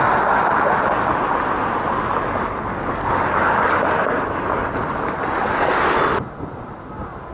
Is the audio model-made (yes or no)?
no